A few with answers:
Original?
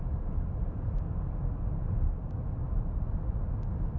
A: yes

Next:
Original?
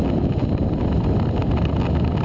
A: yes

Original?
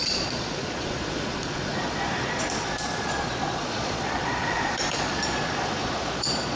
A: no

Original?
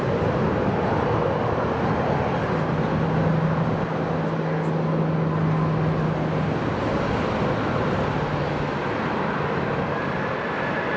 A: yes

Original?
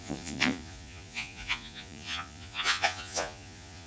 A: no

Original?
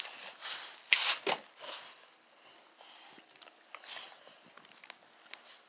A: yes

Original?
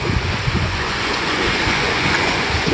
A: no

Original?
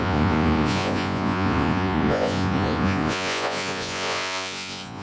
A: no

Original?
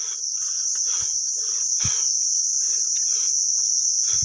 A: yes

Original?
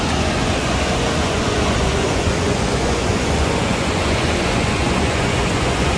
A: no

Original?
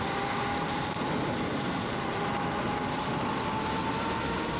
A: yes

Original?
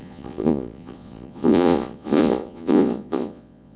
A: no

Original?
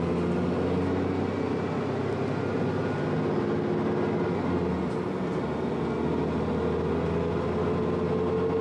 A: yes